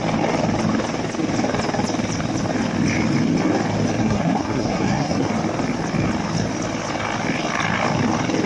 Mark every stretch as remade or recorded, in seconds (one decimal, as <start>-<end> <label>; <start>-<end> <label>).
0.0-4.0 recorded; 4.0-5.3 remade; 5.3-8.5 recorded